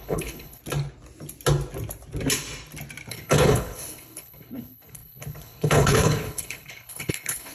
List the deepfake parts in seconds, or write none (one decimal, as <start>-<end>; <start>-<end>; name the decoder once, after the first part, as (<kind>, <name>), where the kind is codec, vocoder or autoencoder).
0.0-0.6 (codec, HILCodec); 3.1-7.5